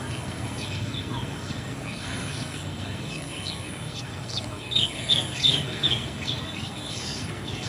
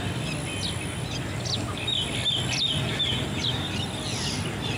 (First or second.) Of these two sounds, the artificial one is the first